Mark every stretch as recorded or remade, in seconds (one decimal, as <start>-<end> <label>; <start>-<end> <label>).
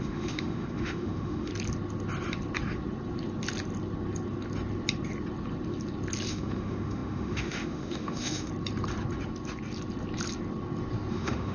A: 0.0-1.5 remade; 1.5-6.3 recorded; 6.3-8.5 remade; 8.5-11.1 recorded; 11.1-11.5 remade